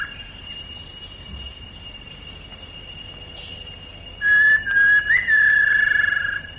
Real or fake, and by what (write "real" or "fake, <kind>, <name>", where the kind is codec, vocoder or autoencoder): real